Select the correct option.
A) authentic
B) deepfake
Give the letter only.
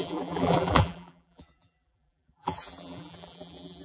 B